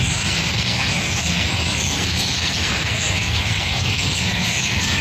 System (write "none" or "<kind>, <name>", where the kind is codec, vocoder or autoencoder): codec, SNAC